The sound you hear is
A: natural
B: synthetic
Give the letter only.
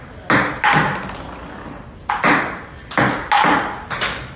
A